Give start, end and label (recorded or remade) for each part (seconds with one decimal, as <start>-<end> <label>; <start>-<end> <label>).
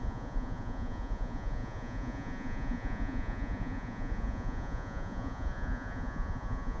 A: 0.0-6.8 remade